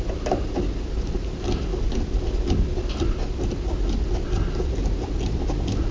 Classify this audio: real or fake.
real